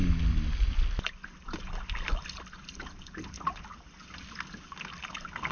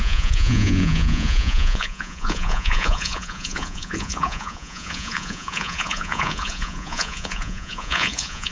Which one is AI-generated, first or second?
second